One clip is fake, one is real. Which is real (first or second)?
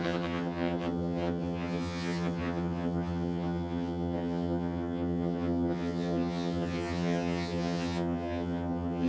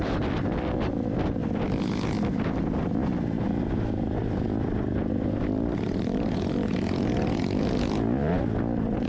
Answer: second